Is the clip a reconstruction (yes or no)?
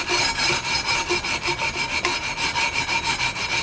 no